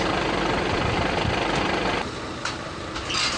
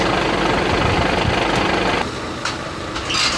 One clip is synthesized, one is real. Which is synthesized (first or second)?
first